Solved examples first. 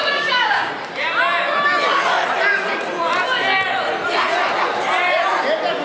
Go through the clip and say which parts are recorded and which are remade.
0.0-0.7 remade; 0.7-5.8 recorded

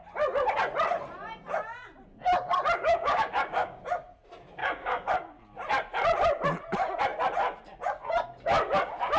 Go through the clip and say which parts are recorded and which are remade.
0.0-2.8 recorded; 2.8-3.8 remade; 3.8-4.6 recorded; 4.6-5.1 remade; 5.1-9.2 recorded

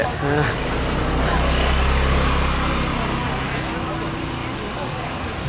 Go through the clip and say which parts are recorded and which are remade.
0.0-5.5 recorded

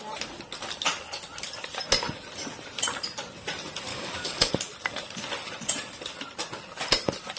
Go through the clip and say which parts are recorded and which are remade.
0.0-3.9 recorded; 3.9-4.5 remade; 4.5-7.4 recorded

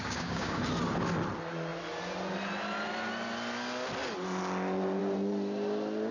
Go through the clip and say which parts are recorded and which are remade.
0.0-0.6 remade; 0.6-6.1 recorded

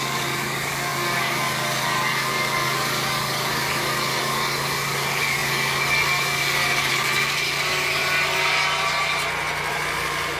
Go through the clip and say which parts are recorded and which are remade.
0.0-8.0 remade; 8.0-9.7 recorded; 9.7-10.4 remade

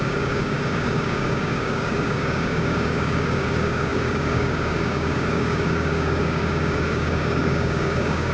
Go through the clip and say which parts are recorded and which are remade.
0.0-8.3 remade